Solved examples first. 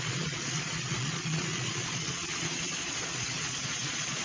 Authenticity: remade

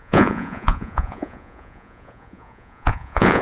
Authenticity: remade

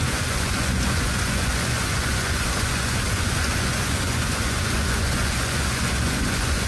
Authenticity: remade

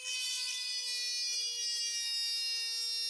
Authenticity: recorded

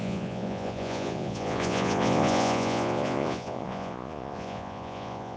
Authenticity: remade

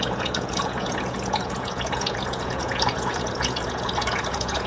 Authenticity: remade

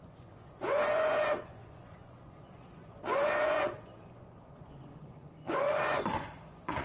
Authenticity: remade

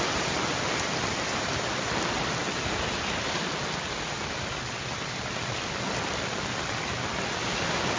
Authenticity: recorded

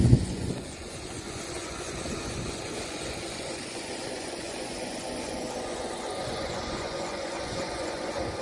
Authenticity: remade